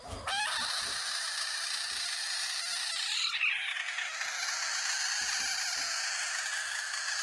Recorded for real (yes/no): yes